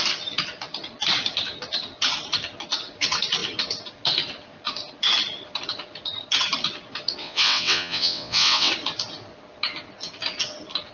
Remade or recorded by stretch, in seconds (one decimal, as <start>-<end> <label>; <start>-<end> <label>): 0.0-7.2 recorded; 7.2-8.7 remade; 8.7-10.9 recorded